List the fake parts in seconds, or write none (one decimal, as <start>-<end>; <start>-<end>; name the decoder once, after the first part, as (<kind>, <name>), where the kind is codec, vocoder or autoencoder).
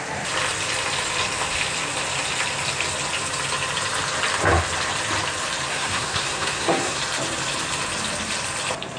5.7-7.0 (codec, SNAC)